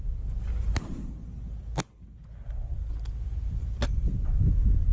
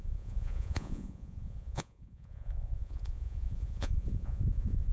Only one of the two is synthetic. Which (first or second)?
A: second